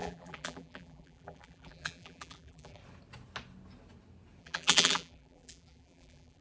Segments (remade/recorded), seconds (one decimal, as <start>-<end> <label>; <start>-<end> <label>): 0.0-2.8 remade; 2.8-4.4 recorded; 4.4-6.4 remade